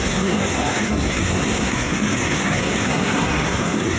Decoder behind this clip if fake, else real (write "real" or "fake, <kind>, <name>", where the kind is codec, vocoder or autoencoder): fake, codec, SNAC